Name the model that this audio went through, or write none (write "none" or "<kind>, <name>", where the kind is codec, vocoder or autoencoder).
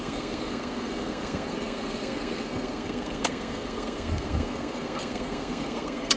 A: codec, SNAC